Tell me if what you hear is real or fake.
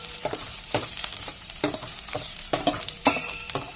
fake